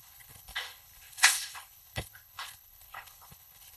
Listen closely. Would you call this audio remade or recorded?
remade